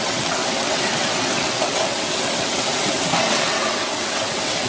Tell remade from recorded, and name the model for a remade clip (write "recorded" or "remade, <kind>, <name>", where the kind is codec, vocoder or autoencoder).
remade, vocoder, WaveNeXt